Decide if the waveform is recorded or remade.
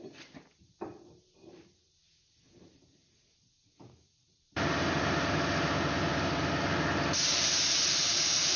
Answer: remade